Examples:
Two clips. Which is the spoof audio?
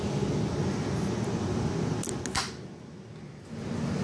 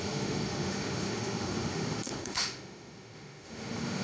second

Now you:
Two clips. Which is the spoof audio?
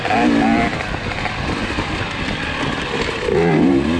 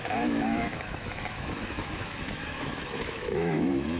second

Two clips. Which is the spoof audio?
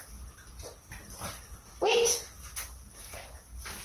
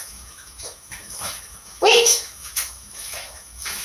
second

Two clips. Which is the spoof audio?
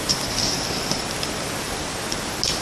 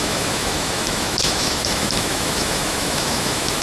second